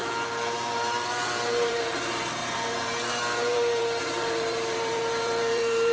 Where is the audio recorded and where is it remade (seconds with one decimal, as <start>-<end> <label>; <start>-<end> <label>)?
0.0-5.9 remade